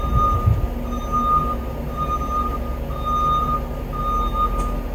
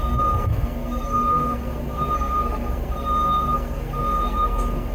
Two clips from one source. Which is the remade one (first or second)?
second